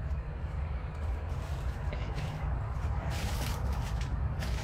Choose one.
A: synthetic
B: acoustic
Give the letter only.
A